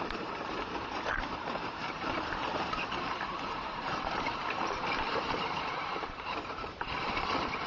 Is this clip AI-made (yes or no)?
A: yes